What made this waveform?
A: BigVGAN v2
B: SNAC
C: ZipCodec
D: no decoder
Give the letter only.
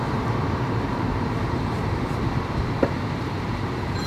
A